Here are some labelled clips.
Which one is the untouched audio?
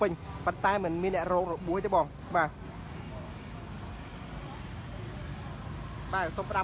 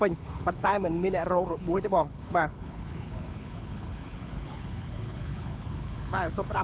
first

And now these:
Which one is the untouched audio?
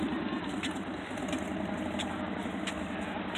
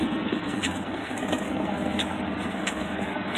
first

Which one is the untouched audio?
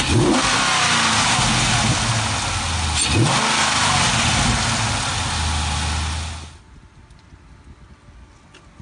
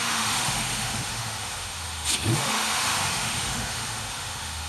first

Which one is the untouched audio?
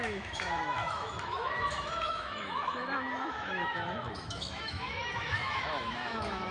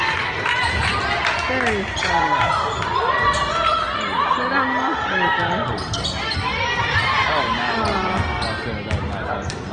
second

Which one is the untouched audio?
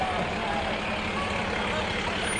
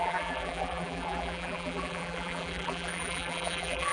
first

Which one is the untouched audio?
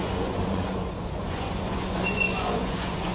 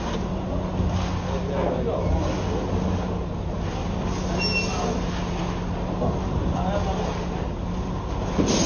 second